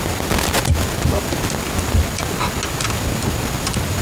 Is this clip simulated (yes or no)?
no